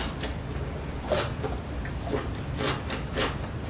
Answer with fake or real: real